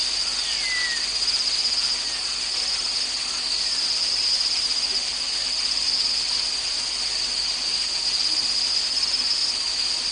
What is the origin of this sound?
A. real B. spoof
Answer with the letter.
A